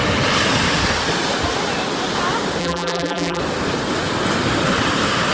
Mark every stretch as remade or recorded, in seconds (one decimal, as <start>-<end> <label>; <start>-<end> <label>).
0.0-2.6 recorded; 2.6-3.4 remade; 3.4-5.3 recorded